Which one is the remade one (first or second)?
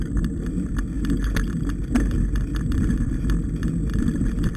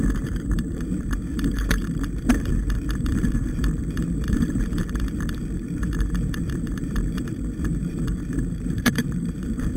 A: second